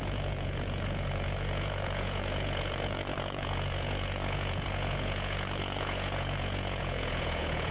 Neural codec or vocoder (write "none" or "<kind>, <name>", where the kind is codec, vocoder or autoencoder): vocoder, Vocos